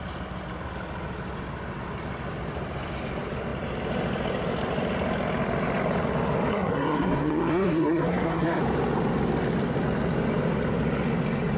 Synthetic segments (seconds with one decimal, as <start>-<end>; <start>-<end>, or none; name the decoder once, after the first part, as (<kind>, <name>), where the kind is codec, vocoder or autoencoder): 6.5-8.6 (codec, SNAC)